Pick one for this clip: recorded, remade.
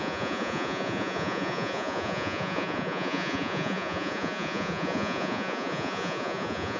remade